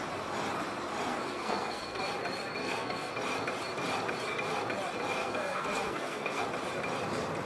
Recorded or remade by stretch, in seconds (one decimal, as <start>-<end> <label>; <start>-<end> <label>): 0.0-1.1 recorded; 1.1-2.0 remade; 2.0-2.6 recorded; 2.6-3.1 remade; 3.1-5.2 recorded; 5.2-6.4 remade; 6.4-7.5 recorded